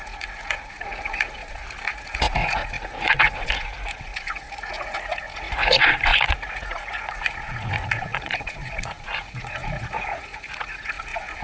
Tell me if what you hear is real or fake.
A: fake